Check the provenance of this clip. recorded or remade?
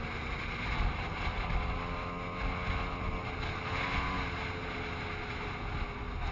recorded